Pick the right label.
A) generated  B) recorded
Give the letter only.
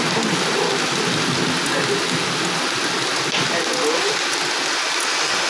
B